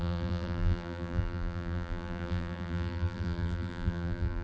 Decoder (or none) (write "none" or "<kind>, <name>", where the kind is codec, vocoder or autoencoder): vocoder, BigVGAN v2